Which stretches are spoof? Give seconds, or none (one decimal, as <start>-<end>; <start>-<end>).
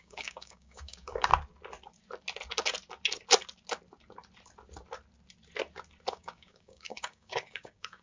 0.0-1.3; 6.1-8.0